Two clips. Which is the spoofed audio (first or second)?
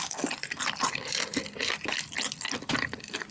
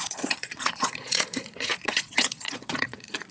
second